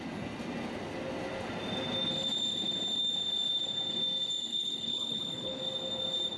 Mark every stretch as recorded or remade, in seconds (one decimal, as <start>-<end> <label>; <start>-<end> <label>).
0.0-4.5 recorded; 4.5-5.6 remade; 5.6-6.4 recorded